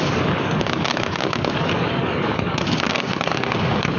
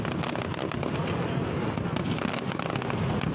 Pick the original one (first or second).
second